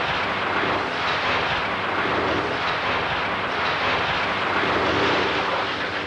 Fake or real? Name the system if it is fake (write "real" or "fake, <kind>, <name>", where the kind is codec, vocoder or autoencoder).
real